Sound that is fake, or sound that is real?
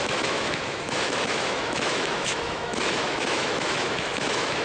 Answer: fake